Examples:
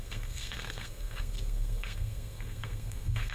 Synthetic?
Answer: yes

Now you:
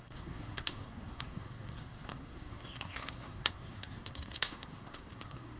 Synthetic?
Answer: yes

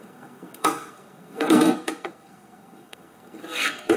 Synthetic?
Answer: yes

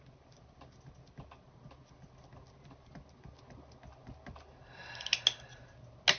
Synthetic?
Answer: no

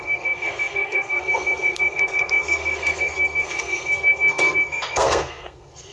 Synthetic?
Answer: yes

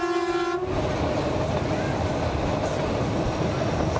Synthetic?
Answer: no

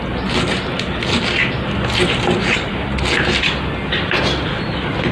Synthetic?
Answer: no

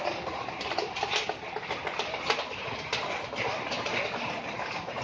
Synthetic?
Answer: no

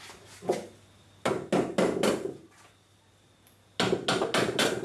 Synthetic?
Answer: no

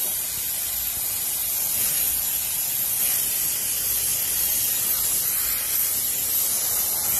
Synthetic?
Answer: no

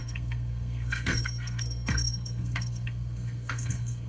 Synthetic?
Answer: yes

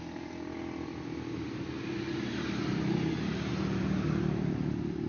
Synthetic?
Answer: no